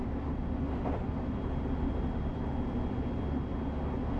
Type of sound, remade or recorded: recorded